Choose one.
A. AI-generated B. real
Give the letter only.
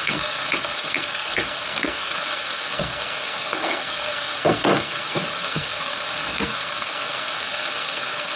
A